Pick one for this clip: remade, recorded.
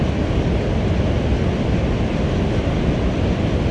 recorded